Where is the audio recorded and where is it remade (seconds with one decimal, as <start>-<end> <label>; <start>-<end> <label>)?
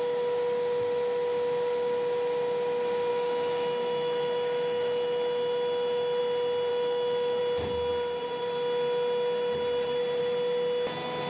0.0-3.1 recorded; 3.1-6.2 remade; 6.2-6.7 recorded; 6.7-7.4 remade; 7.4-11.3 recorded